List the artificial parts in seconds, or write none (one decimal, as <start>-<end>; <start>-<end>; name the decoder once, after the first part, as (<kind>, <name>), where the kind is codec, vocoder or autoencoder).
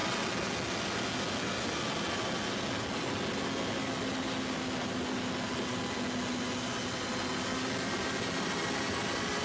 none